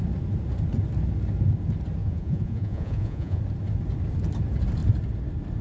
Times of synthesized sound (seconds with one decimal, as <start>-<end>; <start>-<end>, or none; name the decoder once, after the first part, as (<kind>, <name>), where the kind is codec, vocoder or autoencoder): 2.0-3.4 (vocoder, Vocos)